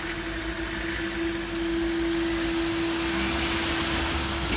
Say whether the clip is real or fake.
real